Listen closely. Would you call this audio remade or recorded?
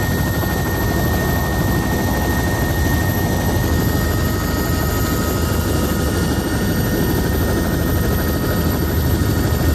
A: recorded